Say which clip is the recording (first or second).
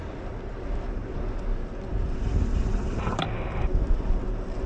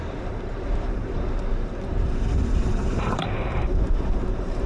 first